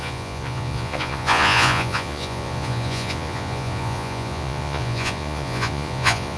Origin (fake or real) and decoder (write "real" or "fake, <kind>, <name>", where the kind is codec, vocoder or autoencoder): fake, vocoder, Vocos